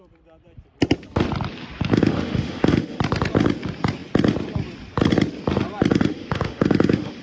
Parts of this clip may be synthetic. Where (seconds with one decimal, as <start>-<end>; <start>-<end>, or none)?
1.9-3.0; 5.9-7.2